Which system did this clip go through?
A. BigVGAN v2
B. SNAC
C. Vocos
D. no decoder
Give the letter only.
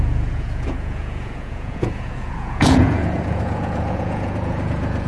C